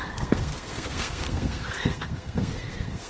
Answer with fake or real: fake